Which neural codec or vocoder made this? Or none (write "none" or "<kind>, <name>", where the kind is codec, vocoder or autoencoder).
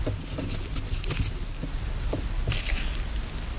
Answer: none